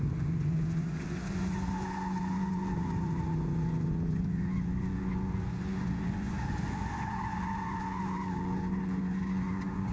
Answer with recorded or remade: remade